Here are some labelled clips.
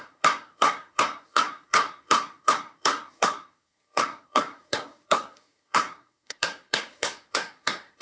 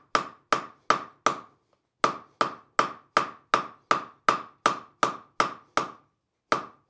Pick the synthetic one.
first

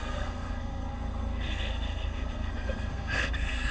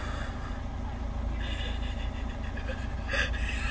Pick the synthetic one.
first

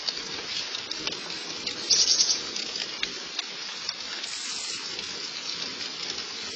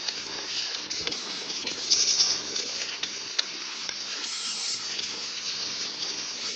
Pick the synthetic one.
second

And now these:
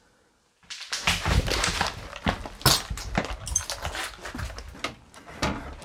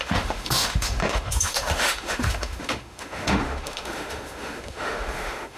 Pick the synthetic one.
second